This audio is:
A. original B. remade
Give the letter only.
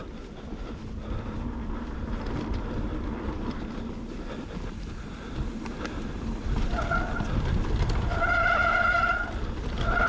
A